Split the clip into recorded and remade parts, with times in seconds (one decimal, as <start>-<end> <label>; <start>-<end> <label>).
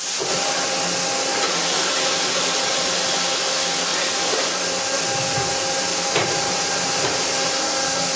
0.0-1.5 recorded; 1.5-2.6 remade; 2.6-3.9 recorded; 3.9-4.8 remade; 4.8-5.9 recorded; 5.9-7.0 remade; 7.0-8.2 recorded